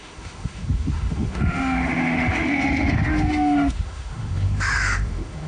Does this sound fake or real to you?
fake